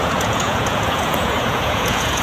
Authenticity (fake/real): fake